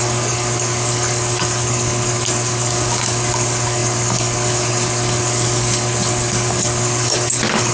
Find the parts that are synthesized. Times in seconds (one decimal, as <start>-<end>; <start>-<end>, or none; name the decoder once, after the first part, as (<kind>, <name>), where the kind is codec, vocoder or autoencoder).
0.0-7.7 (codec, DAC)